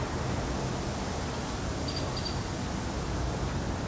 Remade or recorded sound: recorded